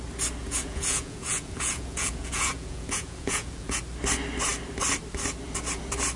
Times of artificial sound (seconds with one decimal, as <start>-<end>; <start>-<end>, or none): 0.4-3.8